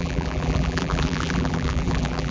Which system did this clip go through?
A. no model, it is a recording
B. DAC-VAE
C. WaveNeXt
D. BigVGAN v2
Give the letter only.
D